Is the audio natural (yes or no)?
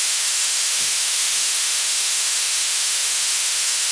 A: no